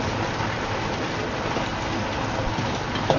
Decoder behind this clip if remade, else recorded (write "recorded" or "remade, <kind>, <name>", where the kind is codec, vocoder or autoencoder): recorded